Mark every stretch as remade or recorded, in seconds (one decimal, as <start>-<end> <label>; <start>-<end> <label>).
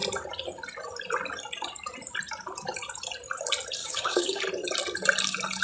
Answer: 0.0-3.8 recorded; 3.8-4.4 remade; 4.4-5.6 recorded